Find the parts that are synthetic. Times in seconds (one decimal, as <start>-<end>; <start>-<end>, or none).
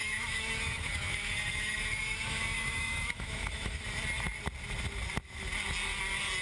0.0-3.8